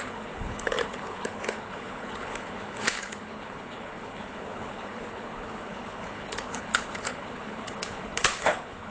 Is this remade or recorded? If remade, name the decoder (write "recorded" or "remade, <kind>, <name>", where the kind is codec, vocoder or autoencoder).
remade, codec, HILCodec